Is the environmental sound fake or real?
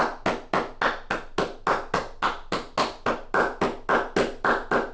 real